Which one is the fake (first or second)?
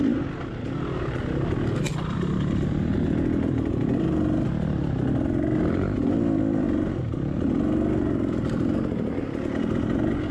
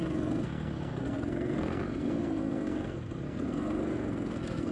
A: second